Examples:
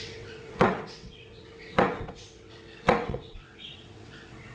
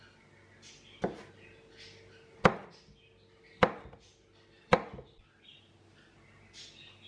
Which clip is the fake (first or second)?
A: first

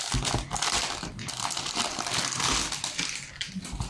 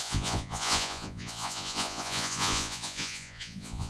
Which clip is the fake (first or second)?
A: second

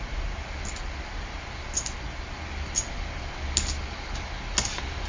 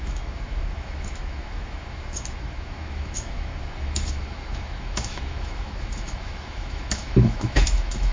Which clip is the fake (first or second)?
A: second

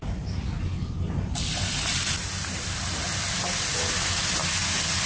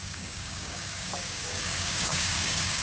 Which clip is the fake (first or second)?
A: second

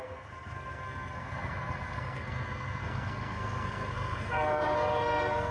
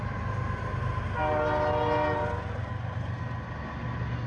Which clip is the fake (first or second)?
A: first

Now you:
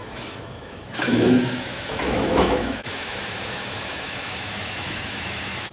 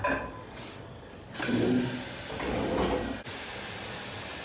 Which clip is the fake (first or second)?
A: first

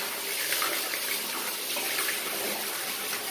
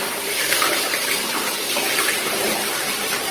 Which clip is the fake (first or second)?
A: second